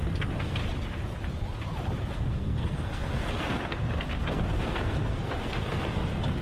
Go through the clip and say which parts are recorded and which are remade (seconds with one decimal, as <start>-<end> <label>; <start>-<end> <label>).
0.0-0.6 remade; 0.6-2.1 recorded; 2.1-6.4 remade